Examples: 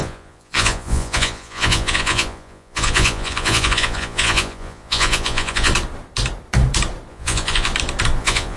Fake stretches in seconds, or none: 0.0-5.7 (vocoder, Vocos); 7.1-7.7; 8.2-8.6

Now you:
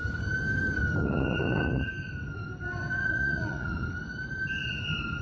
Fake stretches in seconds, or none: 1.0-1.9 (vocoder, Vocos); 3.0-3.9

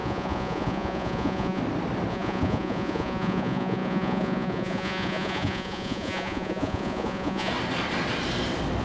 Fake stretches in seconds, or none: 0.0-1.6 (vocoder, Vocos); 2.1-7.5

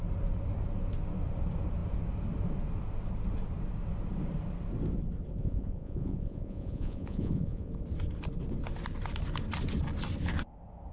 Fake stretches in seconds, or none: 5.4-7.7 (vocoder, Vocos)

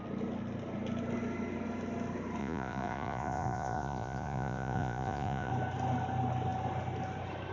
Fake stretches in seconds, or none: 2.4-5.5 (vocoder, Vocos)

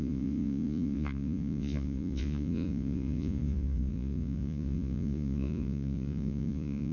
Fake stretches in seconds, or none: 0.0-6.9 (vocoder, Vocos)